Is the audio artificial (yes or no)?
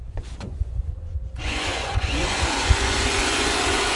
yes